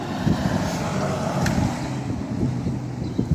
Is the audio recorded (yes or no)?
yes